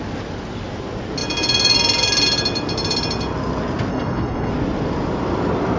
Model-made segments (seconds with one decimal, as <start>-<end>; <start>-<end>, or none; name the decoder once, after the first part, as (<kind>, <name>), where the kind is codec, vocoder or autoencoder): 3.9-4.5 (codec, HILCodec)